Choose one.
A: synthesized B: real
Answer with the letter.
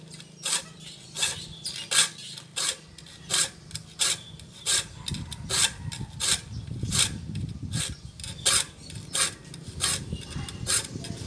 B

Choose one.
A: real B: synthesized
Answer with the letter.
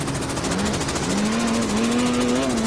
A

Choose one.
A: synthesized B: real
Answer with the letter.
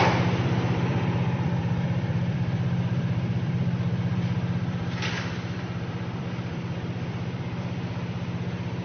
A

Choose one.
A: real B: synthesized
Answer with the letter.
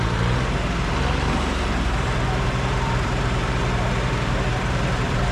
B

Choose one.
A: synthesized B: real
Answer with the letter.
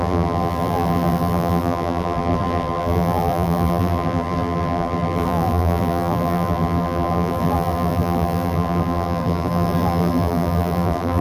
A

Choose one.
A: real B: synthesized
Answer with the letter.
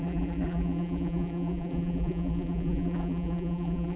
B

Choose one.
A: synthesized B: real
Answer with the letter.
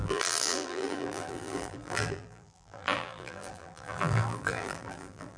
A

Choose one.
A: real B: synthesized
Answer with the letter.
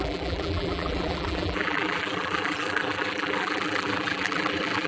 B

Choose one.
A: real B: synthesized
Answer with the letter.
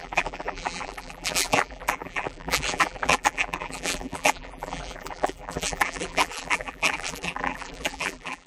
B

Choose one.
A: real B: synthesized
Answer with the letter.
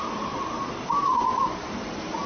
A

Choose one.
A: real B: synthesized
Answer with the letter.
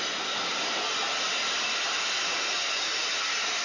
B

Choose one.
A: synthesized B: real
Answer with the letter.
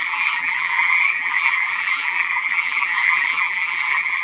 A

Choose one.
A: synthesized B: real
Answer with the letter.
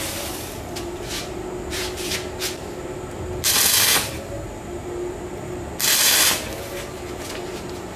A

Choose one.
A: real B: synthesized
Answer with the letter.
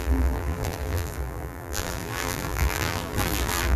B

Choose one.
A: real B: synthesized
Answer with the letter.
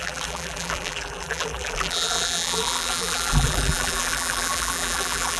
B